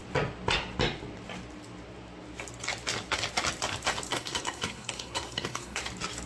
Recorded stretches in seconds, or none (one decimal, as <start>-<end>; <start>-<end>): 0.0-4.1; 5.8-6.3

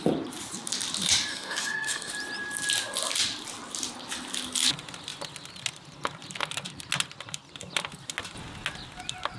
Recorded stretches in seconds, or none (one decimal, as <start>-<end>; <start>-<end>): 0.0-1.3; 2.1-9.4

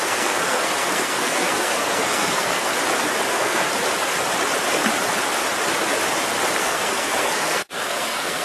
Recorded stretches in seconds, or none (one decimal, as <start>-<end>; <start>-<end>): 2.7-3.3; 3.7-6.6

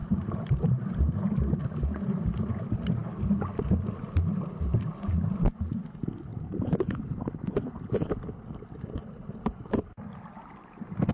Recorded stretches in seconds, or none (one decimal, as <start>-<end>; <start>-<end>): 1.1-6.3; 7.0-9.0

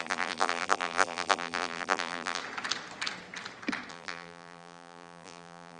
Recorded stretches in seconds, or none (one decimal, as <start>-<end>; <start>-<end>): 2.4-3.9

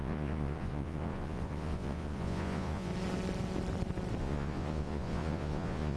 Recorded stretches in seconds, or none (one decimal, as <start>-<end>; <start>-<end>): 2.9-4.2

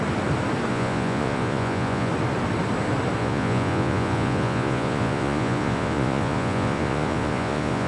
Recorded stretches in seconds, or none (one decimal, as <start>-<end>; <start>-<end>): 0.0-0.7; 2.1-3.2

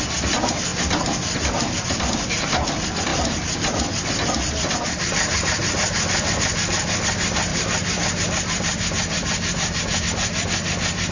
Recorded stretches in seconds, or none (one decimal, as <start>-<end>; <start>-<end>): 0.0-7.5; 10.0-11.1